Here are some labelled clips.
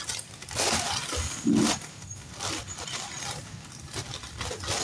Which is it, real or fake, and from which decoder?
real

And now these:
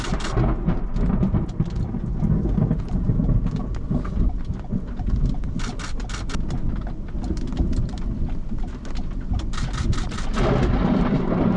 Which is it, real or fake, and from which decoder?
real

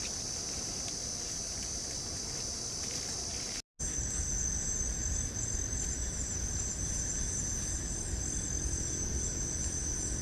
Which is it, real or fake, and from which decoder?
real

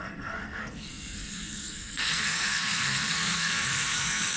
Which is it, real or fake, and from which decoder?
fake, codec, SNAC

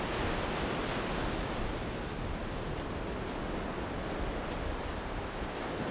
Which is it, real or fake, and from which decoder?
real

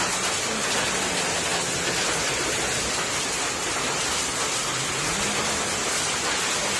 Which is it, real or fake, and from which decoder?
real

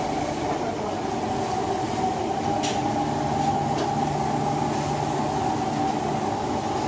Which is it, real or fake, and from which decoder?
real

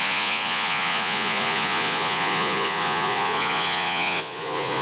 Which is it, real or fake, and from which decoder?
fake, vocoder, Vocos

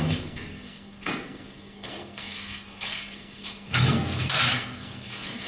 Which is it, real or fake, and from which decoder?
fake, codec, SNAC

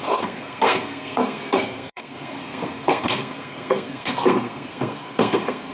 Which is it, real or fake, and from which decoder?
fake, codec, SNAC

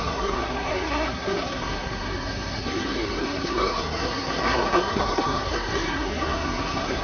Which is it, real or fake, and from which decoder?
fake, codec, SNAC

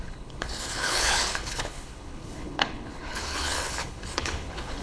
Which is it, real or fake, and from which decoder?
fake, codec, HILCodec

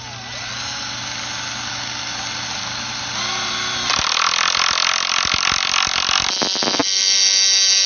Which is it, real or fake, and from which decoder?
real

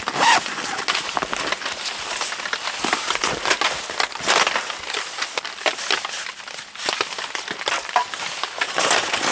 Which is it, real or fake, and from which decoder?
real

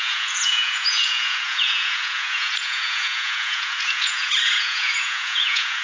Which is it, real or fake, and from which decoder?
fake, vocoder, Vocos